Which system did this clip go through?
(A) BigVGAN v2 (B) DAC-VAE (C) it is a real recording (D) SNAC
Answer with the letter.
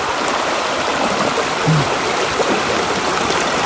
C